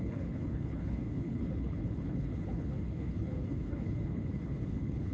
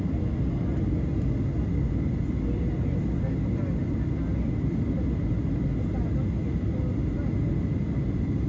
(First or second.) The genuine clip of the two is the second